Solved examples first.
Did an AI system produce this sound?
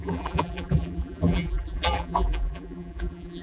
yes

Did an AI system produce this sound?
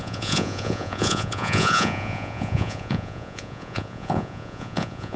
yes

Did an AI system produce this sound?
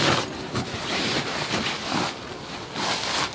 no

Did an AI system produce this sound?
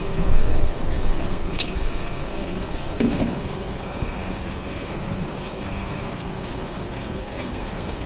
yes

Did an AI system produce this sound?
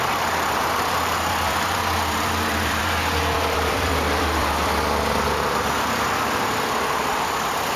yes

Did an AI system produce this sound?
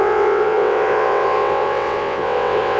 yes